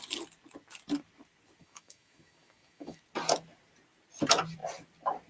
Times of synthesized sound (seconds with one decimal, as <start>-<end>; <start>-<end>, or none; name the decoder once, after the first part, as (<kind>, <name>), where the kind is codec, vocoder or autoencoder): 1.6-3.0 (autoencoder, DAC-VAE)